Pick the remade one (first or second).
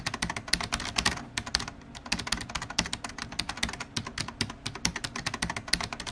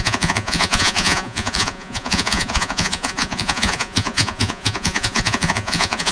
second